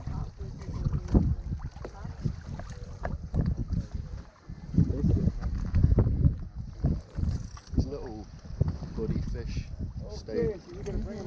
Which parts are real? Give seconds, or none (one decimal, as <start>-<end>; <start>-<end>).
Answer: 0.0-11.3